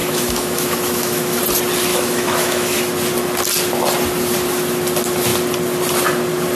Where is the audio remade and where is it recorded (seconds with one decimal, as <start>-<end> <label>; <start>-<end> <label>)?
0.0-1.4 remade; 1.4-1.9 recorded; 1.9-2.8 remade; 2.8-6.6 recorded